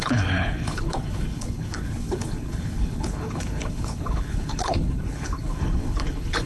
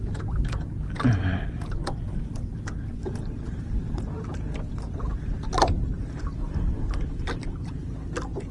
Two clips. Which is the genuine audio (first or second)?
second